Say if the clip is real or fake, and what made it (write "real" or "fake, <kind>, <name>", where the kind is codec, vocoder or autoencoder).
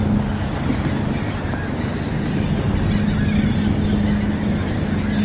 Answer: real